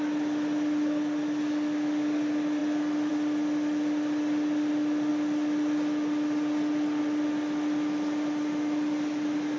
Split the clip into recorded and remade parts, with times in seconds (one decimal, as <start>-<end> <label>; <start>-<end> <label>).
0.0-9.6 recorded